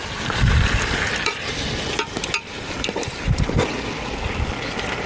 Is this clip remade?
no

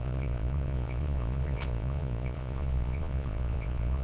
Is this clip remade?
yes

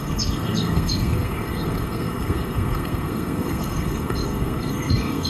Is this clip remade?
yes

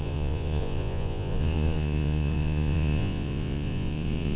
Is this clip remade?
yes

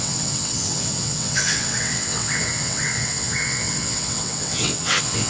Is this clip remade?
yes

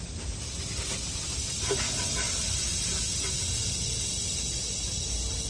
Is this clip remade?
no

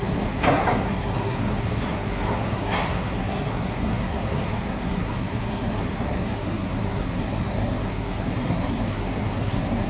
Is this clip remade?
yes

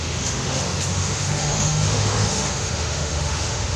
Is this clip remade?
yes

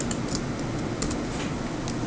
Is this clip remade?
no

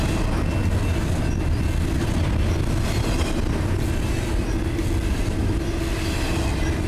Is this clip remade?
no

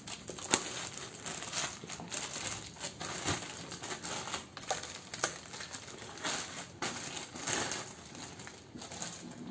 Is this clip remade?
no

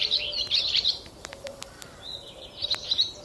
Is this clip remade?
yes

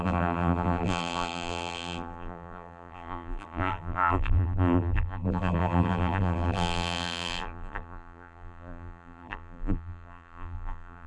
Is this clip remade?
yes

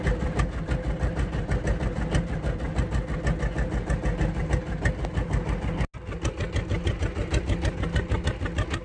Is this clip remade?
no